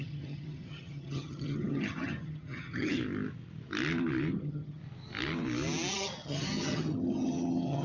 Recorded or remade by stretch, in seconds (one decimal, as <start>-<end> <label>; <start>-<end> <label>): 0.0-3.0 remade; 3.0-4.3 recorded; 4.3-4.8 remade; 4.8-5.9 recorded; 5.9-7.8 remade